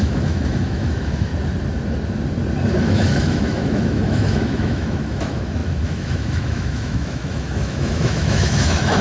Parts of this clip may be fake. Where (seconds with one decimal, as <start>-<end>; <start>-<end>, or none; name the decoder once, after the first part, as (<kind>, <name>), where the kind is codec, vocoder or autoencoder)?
0.0-1.3 (autoencoder, DAC-VAE); 2.8-9.0